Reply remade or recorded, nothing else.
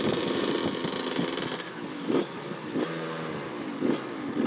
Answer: recorded